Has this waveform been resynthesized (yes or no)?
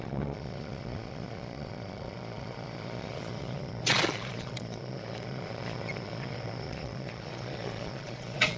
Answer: yes